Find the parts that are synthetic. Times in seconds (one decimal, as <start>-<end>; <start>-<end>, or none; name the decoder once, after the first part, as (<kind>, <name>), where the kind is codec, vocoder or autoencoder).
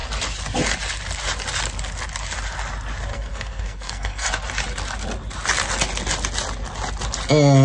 3.1-4.3 (codec, SNAC)